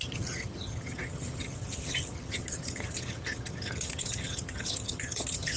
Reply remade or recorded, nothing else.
remade